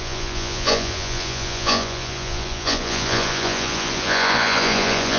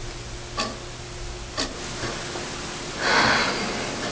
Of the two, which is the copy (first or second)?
first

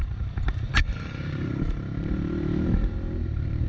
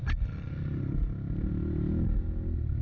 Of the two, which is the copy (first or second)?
first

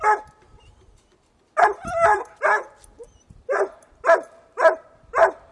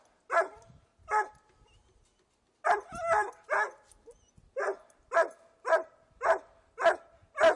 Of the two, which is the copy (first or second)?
first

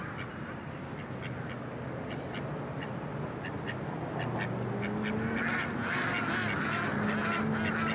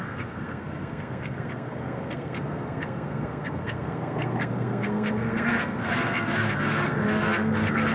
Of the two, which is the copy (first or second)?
second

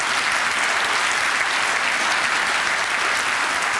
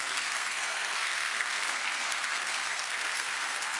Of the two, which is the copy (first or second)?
second